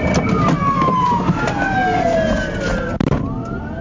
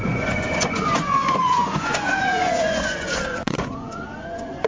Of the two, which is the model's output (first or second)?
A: second